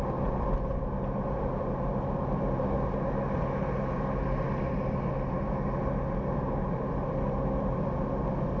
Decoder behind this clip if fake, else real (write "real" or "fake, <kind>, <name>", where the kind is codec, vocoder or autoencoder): real